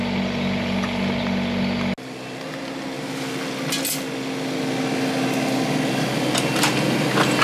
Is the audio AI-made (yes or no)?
no